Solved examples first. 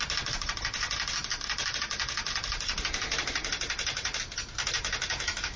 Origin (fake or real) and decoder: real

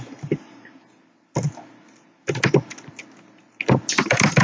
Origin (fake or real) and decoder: real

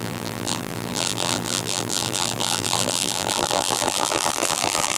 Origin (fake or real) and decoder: fake, vocoder, BigVGAN v2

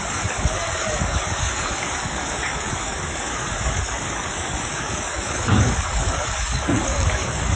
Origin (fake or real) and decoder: fake, codec, DAC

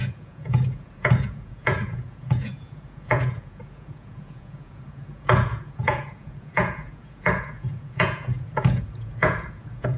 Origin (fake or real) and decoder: fake, vocoder, Vocos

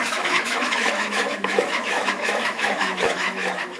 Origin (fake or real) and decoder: fake, autoencoder, DAC-VAE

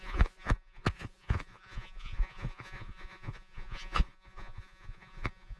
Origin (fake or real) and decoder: fake, vocoder, Vocos